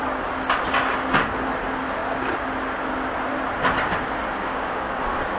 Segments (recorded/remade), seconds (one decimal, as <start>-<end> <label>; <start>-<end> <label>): 0.0-4.4 recorded; 4.4-5.0 remade; 5.0-5.4 recorded

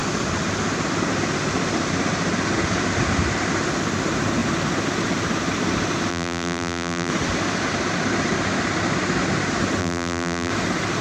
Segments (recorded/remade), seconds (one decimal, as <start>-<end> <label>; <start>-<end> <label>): 0.0-6.1 recorded; 6.1-7.1 remade; 7.1-9.8 recorded; 9.8-10.5 remade; 10.5-11.0 recorded